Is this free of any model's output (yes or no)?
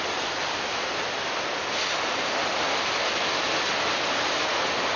yes